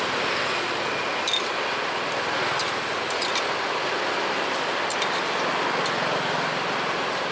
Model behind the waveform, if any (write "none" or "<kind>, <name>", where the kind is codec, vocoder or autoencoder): none